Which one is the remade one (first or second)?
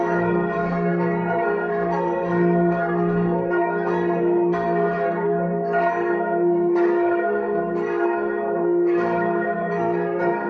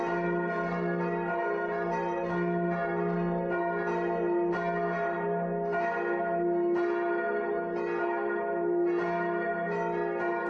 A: first